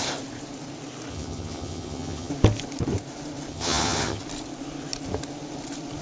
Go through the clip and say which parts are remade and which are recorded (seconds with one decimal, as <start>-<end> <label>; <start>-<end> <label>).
0.0-1.1 recorded; 1.1-2.3 remade; 2.3-3.5 recorded; 3.5-4.2 remade; 4.2-6.0 recorded